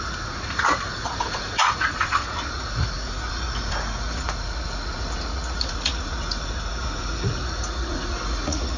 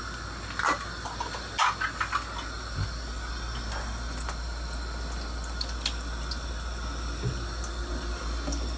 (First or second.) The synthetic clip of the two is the first